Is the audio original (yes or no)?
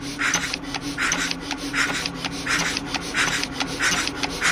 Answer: yes